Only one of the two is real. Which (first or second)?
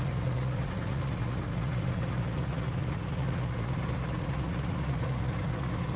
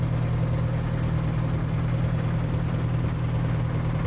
second